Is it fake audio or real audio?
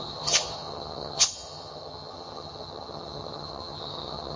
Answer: fake